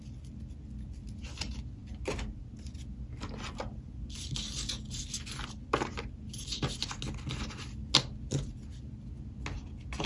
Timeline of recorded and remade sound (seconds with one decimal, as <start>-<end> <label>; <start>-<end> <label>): 0.0-10.1 recorded